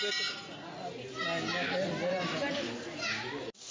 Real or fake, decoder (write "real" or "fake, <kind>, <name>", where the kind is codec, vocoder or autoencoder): real